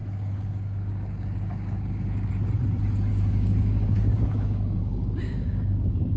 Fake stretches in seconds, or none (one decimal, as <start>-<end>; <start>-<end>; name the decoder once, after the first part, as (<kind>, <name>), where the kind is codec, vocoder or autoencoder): 0.0-2.3 (codec, DAC); 3.1-6.2